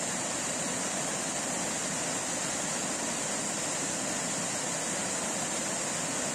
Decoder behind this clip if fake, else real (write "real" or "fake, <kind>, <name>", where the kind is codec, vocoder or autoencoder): real